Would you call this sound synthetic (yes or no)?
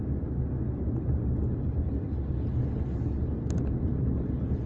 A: no